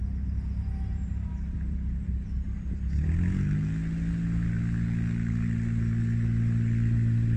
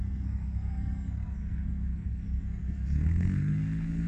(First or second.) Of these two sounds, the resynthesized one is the second